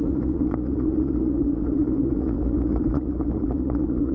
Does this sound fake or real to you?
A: fake